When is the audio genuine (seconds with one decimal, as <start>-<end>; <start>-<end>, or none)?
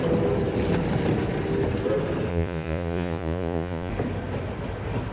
0.0-2.3; 3.9-5.1